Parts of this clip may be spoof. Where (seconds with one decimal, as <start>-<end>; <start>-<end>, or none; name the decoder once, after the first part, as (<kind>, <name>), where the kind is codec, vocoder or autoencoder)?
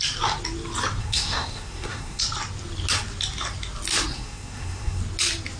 1.0-2.2 (codec, SNAC); 4.1-5.0